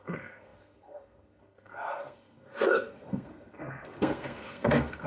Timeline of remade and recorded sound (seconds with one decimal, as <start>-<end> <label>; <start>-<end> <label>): 0.0-5.1 remade